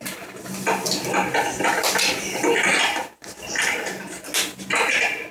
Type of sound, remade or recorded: recorded